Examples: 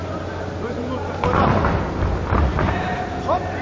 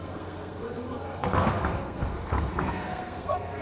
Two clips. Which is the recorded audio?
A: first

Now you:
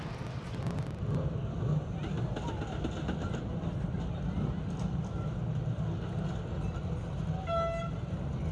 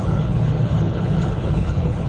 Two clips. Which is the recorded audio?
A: first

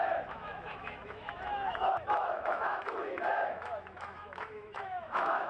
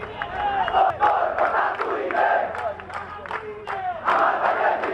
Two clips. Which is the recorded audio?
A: second